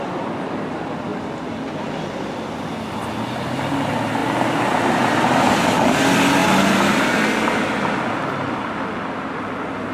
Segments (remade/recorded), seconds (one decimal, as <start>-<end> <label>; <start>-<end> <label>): 0.0-9.9 recorded